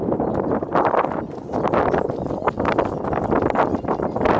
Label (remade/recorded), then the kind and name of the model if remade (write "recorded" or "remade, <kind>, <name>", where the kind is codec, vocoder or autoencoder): recorded